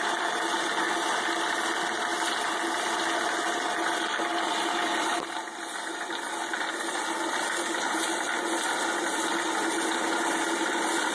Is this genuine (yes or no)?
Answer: yes